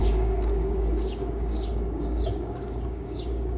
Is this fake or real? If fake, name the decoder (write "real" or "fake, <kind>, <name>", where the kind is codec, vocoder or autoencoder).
fake, codec, DAC